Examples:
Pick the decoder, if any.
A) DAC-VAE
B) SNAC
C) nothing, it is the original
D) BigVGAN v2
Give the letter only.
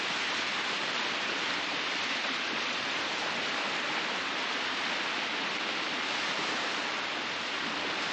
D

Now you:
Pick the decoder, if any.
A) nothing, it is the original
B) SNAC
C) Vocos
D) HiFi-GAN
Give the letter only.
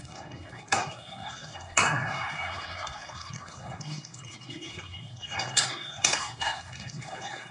B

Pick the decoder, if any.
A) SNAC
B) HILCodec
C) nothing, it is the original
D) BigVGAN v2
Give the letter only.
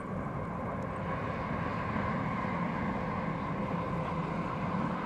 C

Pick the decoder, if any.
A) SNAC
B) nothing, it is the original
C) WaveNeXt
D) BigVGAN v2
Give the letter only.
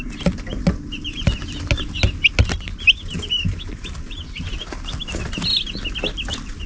B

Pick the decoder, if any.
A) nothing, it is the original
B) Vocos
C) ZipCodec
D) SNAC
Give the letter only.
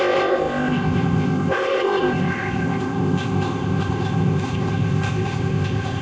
C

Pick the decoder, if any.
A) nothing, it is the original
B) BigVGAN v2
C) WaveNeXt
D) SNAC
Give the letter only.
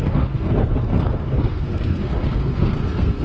D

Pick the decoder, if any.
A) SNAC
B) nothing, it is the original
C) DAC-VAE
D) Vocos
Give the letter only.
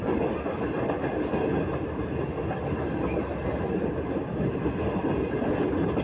B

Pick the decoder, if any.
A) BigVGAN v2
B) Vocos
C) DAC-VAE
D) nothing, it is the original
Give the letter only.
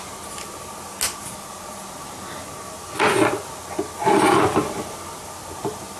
D